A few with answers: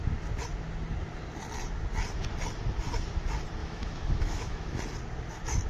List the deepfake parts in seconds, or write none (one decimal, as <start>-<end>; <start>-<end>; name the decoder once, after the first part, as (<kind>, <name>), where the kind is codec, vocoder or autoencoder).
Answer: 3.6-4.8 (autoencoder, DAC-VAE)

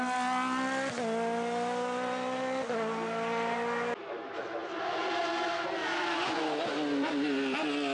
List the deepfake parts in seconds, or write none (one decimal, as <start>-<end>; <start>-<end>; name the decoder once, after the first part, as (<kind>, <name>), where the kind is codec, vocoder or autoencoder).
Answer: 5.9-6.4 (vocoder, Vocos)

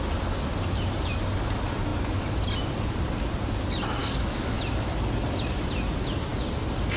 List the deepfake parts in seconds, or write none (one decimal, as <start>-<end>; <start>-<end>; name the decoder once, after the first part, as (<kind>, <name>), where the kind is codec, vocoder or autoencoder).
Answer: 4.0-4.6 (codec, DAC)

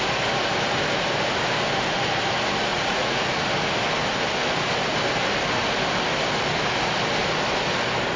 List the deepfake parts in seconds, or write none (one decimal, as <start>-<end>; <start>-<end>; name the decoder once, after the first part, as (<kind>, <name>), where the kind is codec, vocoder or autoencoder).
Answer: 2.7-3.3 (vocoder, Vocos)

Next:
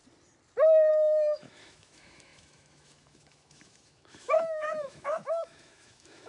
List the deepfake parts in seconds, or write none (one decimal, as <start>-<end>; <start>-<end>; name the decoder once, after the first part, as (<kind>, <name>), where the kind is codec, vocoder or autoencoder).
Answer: 0.9-6.3 (autoencoder, DAC-VAE)